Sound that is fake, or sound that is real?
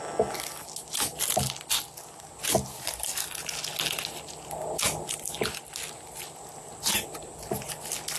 real